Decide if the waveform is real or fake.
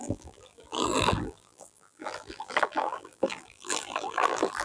fake